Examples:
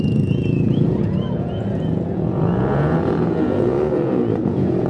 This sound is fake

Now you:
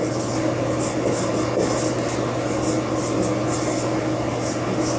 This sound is real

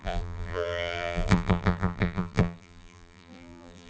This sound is fake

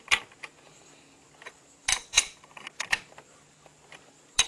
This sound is fake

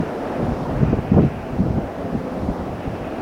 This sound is real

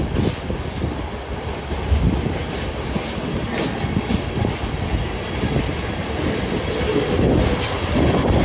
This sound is real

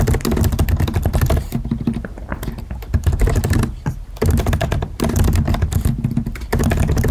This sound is real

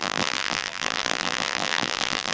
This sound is fake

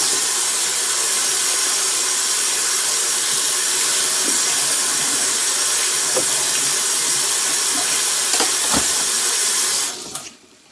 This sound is fake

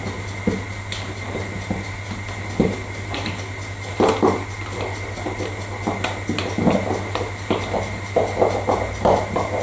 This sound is real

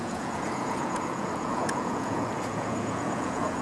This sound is fake